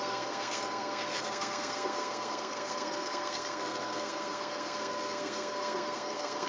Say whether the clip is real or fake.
fake